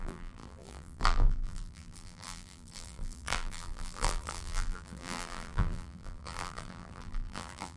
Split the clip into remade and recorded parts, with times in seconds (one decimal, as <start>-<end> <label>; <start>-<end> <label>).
0.0-7.8 remade